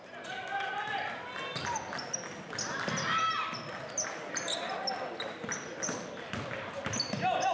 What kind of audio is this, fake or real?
real